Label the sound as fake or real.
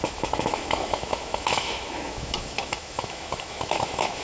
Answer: fake